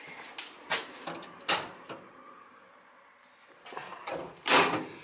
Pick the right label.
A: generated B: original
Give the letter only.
B